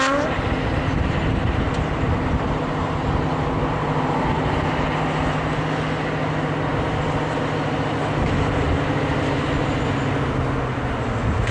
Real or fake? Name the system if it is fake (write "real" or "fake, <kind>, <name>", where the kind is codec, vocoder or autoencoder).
real